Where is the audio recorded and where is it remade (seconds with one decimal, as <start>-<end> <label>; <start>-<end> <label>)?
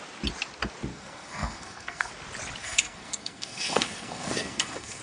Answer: 0.0-0.9 recorded; 0.9-2.1 remade; 2.1-2.6 recorded; 2.6-5.0 remade